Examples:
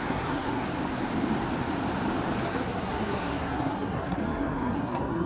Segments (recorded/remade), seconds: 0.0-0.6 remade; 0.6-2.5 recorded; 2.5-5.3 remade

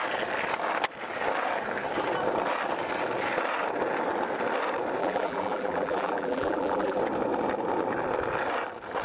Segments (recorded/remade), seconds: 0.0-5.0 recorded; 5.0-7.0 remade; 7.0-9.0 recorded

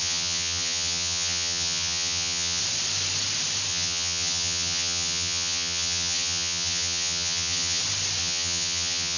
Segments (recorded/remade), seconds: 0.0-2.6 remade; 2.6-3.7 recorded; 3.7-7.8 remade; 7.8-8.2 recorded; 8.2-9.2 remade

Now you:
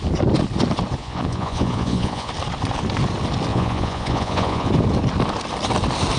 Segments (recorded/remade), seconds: 0.0-1.0 recorded; 1.0-2.3 remade; 2.3-3.5 recorded; 3.5-4.7 remade; 4.7-6.2 recorded

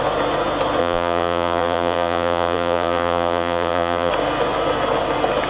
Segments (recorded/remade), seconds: 0.0-0.8 recorded; 0.8-4.1 remade; 4.1-5.5 recorded

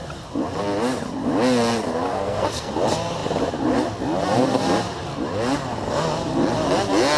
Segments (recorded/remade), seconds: 0.0-2.1 recorded; 2.1-2.7 remade; 2.7-7.2 recorded

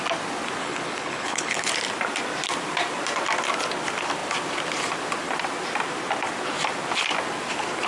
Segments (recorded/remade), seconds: 0.0-0.6 recorded; 0.6-1.7 remade; 1.7-7.9 recorded